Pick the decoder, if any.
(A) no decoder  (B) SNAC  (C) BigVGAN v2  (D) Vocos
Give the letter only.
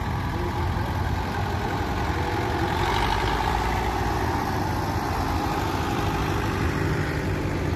A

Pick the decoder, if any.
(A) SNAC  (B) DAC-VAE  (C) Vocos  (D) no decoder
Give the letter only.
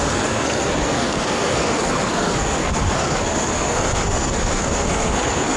A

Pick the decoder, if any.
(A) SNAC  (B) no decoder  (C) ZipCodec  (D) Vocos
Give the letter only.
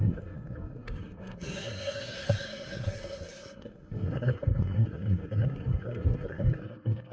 A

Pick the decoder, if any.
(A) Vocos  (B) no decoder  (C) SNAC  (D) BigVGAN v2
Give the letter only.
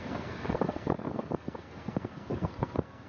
C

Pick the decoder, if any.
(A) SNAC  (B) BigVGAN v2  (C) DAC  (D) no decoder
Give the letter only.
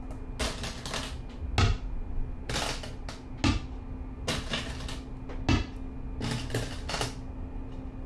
D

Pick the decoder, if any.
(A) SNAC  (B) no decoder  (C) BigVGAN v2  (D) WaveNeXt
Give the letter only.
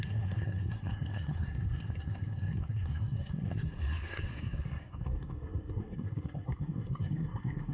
A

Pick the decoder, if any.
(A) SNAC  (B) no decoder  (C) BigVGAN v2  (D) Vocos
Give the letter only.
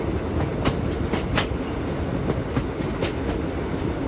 B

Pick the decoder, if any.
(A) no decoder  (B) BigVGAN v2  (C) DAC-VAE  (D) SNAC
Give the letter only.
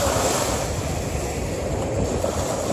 A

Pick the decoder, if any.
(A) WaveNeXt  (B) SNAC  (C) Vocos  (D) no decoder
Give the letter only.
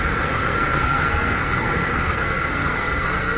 B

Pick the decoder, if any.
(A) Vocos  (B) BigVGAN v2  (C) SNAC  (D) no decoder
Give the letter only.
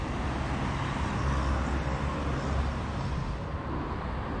D